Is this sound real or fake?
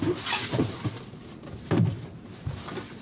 real